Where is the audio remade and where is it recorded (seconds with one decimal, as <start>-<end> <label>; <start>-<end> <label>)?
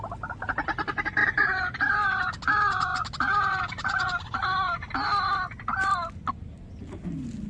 0.0-7.5 recorded